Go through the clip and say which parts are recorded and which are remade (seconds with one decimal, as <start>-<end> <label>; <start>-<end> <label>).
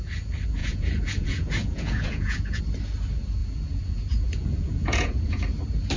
0.0-0.6 recorded; 0.6-2.6 remade; 2.6-3.4 recorded; 3.4-5.4 remade; 5.4-6.0 recorded